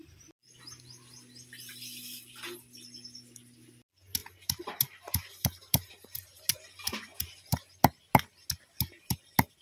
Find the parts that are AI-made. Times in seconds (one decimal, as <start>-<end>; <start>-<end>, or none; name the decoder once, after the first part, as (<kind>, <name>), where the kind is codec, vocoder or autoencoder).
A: 4.2-6.4 (vocoder, BigVGAN v2)